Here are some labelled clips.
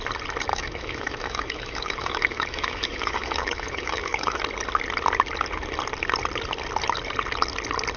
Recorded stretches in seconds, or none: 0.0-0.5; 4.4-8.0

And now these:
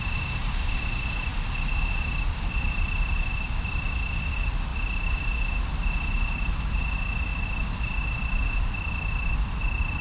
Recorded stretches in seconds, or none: 0.0-10.0